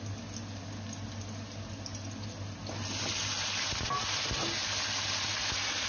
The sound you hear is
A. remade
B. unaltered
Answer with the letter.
B